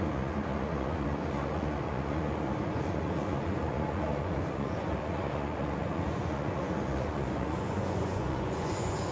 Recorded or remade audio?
remade